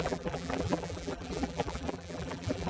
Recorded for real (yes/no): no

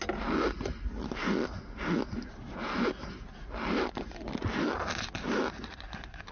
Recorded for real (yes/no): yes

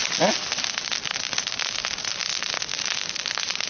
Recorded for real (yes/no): yes